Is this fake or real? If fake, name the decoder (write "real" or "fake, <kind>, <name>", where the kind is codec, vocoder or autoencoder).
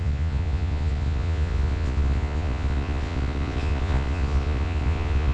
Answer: fake, vocoder, Vocos